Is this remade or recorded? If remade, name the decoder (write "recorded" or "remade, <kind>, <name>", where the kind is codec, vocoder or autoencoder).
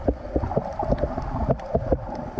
recorded